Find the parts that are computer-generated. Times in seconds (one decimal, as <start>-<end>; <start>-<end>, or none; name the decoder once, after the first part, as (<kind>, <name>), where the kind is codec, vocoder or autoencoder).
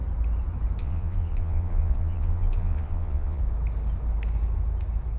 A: 0.8-3.4 (vocoder, Vocos)